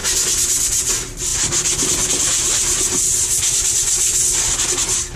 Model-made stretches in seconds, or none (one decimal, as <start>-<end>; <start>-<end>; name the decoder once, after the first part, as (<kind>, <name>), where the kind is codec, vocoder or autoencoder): none

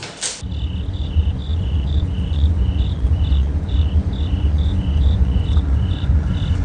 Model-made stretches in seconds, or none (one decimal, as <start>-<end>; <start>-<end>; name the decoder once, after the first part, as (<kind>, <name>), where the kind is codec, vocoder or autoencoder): 0.9-6.6 (vocoder, Vocos)